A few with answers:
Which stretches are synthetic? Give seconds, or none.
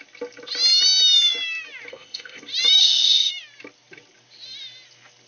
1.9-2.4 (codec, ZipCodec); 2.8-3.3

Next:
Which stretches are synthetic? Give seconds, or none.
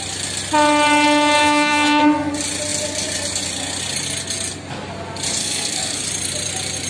1.4-2.3 (codec, SNAC); 5.4-6.0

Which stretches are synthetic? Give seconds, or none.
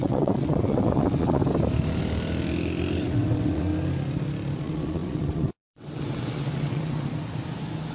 0.0-1.4 (vocoder, WaveNeXt); 3.0-3.7; 4.6-7.1